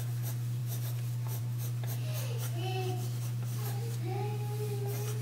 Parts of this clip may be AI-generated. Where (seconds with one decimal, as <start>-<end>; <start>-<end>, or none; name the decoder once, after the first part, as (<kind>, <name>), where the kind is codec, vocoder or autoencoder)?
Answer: none